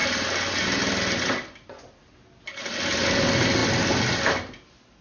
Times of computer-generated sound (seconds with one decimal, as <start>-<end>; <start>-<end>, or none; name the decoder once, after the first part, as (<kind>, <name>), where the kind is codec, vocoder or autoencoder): none